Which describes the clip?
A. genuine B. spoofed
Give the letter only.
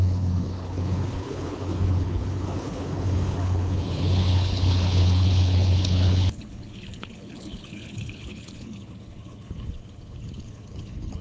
B